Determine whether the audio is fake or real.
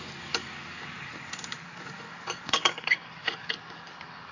fake